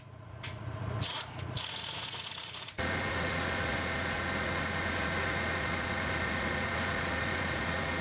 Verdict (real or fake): fake